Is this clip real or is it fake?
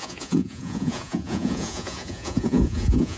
fake